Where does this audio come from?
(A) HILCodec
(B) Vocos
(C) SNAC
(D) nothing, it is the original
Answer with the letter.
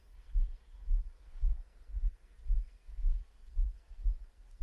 C